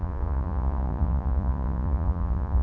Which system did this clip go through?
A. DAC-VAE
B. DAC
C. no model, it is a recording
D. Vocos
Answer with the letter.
D